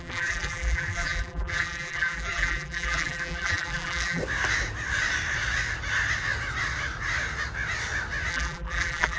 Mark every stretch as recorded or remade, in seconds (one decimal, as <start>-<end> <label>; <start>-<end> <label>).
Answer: 0.0-4.2 remade; 4.2-8.3 recorded; 8.3-9.2 remade